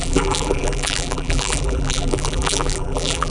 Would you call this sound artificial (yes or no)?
yes